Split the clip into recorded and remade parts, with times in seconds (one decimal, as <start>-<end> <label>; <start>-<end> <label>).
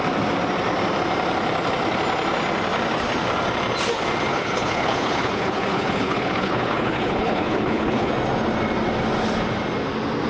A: 0.0-4.3 recorded; 4.3-8.1 remade; 8.1-10.3 recorded